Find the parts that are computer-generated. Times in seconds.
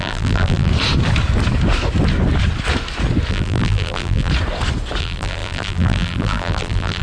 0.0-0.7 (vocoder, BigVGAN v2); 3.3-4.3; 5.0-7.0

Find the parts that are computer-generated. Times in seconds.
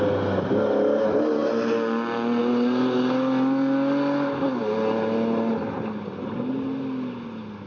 none